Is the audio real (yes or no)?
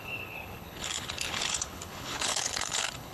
no